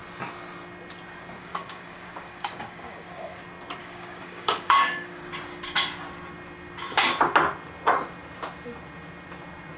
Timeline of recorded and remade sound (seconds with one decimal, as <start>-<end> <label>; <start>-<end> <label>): 0.0-1.4 recorded; 1.4-3.4 remade; 3.4-3.8 recorded; 3.8-5.3 remade; 5.3-9.8 recorded